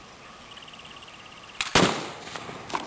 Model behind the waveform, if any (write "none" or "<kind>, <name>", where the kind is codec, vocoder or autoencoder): none